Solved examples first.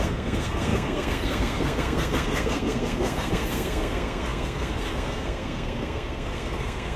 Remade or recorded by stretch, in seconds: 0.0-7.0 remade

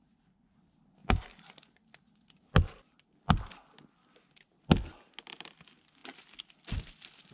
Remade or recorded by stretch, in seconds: 0.0-7.3 recorded

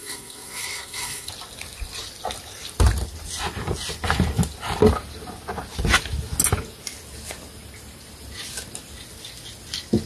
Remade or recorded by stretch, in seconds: 0.0-1.3 remade; 1.3-10.1 recorded